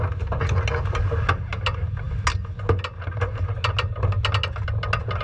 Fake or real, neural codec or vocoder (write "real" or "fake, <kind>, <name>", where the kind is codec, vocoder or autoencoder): real